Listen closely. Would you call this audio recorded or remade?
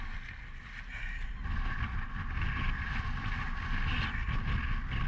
recorded